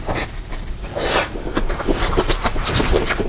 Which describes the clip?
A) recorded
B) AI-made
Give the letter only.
B